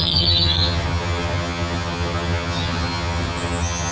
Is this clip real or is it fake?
fake